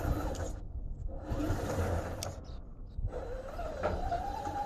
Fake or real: real